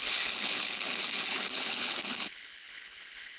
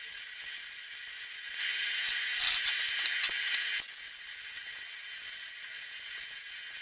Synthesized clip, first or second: first